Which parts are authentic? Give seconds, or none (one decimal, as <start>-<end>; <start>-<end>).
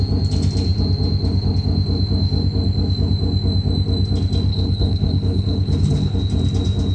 0.0-4.5; 6.2-6.9